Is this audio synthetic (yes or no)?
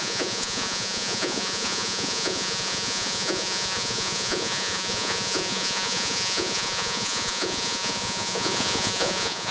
yes